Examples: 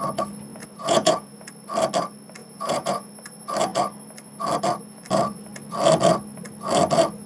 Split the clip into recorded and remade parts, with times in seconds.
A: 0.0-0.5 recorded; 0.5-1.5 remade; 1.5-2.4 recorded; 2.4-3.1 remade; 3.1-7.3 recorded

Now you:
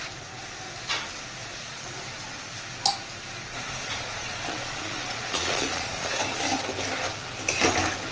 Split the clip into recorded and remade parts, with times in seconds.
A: 0.0-1.4 recorded; 1.4-1.9 remade; 1.9-3.5 recorded; 3.5-6.1 remade; 6.1-8.1 recorded

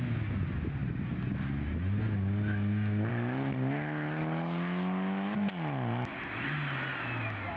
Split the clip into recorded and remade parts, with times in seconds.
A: 0.0-7.6 recorded

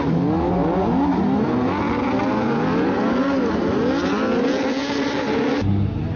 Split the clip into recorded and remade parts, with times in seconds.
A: 0.0-6.2 recorded

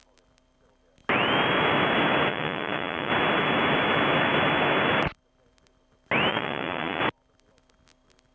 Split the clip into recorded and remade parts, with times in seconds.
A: 0.0-2.3 recorded; 2.3-3.1 remade; 3.1-6.3 recorded; 6.3-7.0 remade; 7.0-8.3 recorded